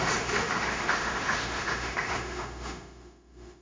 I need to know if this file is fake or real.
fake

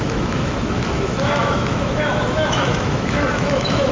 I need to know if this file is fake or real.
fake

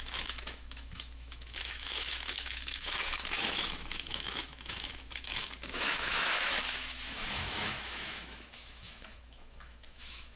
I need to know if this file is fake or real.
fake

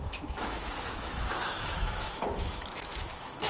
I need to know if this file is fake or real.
fake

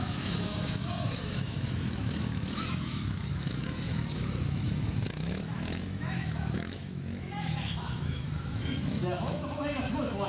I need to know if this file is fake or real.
fake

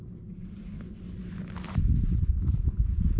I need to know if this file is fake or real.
real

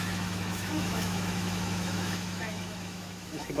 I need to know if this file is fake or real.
fake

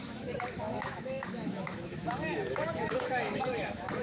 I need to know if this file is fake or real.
fake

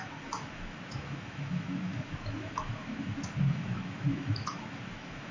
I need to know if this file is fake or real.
fake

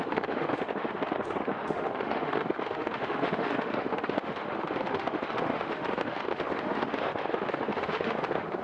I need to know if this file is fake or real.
fake